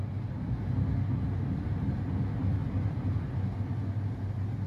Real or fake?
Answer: real